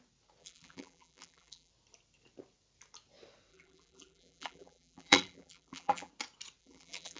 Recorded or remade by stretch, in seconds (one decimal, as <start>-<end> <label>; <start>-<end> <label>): 0.0-0.4 recorded; 0.4-1.7 remade; 1.7-3.5 recorded; 3.5-6.1 remade; 6.1-6.6 recorded; 6.6-7.2 remade